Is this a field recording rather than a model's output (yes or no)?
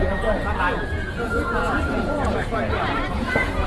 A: no